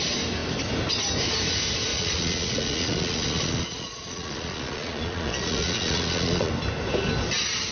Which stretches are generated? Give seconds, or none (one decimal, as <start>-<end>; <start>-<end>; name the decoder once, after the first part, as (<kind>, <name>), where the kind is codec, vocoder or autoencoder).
1.9-6.5 (vocoder, Vocos)